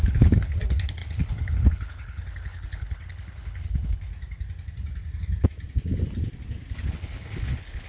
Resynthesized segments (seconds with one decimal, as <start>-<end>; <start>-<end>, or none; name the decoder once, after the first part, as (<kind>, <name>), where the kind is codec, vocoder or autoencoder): 0.0-4.1 (codec, HILCodec); 6.9-7.9